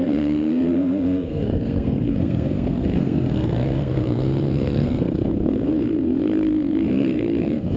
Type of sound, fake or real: fake